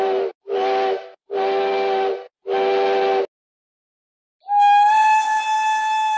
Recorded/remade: recorded